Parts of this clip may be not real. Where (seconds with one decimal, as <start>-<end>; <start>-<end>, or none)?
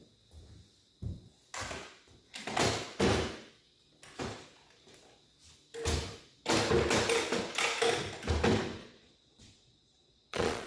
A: 8.8-10.7